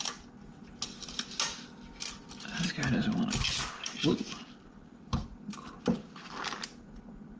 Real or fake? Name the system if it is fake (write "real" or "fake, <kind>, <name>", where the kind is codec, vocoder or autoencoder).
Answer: real